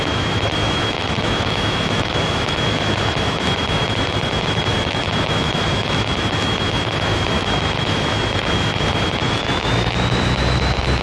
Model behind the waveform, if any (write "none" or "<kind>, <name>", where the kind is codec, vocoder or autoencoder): autoencoder, DAC-VAE